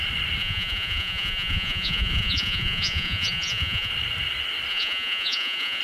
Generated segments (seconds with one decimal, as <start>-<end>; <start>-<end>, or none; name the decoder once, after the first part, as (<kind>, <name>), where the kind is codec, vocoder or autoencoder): 0.4-3.9 (vocoder, Vocos); 4.7-5.8